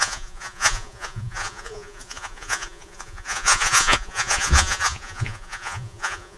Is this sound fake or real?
fake